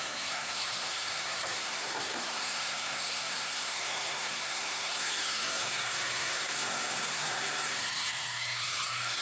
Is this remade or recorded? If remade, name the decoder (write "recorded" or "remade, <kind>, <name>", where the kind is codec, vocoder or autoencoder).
remade, codec, SNAC